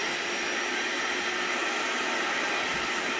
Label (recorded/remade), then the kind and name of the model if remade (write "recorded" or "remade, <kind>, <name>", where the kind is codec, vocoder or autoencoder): recorded